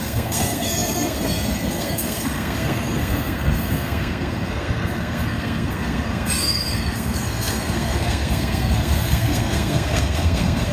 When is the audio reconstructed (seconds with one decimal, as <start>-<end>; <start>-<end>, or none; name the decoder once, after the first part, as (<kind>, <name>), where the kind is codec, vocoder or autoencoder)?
0.0-10.7 (codec, SNAC)